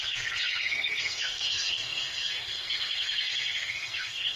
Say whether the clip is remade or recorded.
remade